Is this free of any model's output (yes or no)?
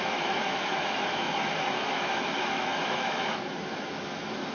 no